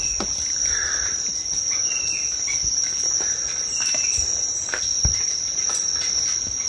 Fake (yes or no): no